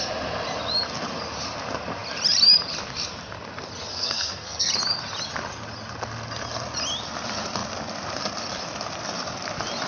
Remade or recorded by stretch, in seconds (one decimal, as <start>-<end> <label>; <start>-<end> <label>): 0.0-3.9 recorded; 3.9-4.7 remade; 4.7-9.9 recorded

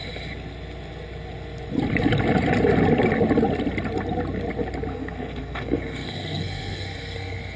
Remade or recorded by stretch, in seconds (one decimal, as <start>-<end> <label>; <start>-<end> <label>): 0.0-4.9 recorded; 4.9-7.6 remade

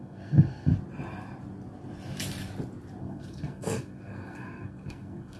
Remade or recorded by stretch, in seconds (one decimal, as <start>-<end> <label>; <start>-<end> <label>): 0.0-0.7 remade; 0.7-3.0 recorded; 3.0-5.4 remade